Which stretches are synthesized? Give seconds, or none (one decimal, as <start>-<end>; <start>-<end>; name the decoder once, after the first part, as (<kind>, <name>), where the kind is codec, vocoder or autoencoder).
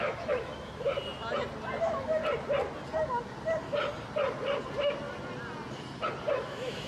0.0-0.9 (autoencoder, DAC-VAE); 1.8-2.2; 6.3-6.9